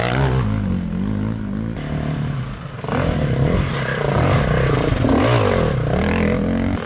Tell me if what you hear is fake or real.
real